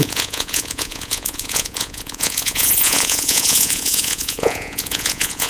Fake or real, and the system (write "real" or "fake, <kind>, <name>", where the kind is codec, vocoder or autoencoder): fake, vocoder, Vocos